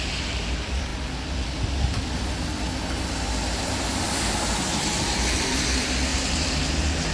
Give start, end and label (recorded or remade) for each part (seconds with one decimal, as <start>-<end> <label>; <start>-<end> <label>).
0.0-6.1 recorded; 6.1-6.6 remade; 6.6-7.1 recorded